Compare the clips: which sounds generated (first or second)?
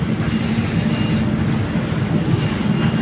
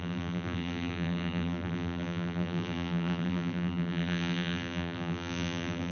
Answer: second